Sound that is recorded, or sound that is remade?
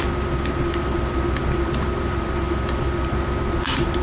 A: recorded